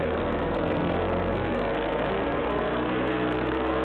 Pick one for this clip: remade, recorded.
remade